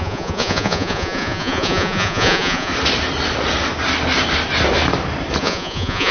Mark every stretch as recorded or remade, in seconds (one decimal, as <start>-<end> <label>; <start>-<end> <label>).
0.0-2.7 remade; 2.7-5.4 recorded; 5.4-6.1 remade